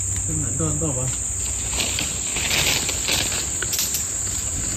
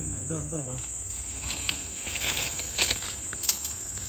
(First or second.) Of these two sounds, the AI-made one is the second